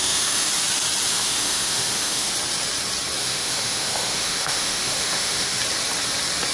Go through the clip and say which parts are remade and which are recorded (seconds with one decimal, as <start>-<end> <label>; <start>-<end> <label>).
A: 0.0-0.5 remade; 0.5-1.1 recorded; 1.1-2.3 remade; 2.3-3.2 recorded; 3.2-5.6 remade; 5.6-6.5 recorded

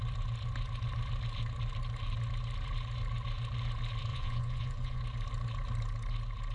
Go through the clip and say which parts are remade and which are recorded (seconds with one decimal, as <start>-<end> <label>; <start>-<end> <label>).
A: 0.0-4.1 recorded; 4.1-5.0 remade; 5.0-6.5 recorded

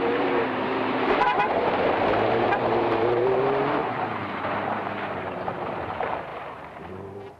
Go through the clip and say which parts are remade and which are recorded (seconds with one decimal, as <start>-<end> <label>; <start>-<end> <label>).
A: 0.0-6.3 remade; 6.3-6.9 recorded; 6.9-7.4 remade

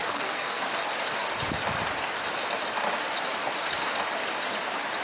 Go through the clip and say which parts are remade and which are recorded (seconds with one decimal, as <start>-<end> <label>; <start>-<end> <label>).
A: 0.0-0.6 remade; 0.6-5.0 recorded

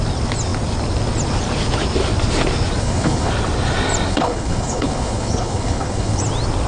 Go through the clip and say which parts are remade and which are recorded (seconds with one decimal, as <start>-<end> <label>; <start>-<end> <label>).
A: 0.0-2.8 recorded; 2.8-3.3 remade; 3.3-4.1 recorded; 4.1-6.2 remade; 6.2-6.7 recorded

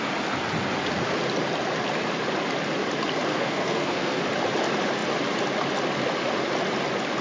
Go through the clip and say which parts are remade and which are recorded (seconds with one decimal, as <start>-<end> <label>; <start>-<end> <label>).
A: 0.0-3.3 recorded; 3.3-4.2 remade; 4.2-7.2 recorded

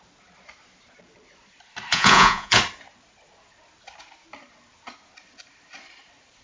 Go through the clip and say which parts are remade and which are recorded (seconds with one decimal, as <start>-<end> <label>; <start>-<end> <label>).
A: 0.0-1.9 recorded; 1.9-2.6 remade; 2.6-6.4 recorded